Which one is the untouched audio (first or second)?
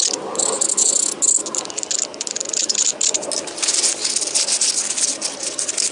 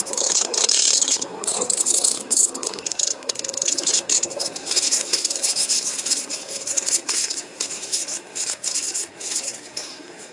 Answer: first